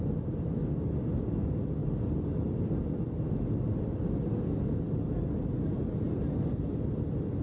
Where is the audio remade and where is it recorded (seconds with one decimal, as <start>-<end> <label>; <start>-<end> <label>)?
0.0-7.4 recorded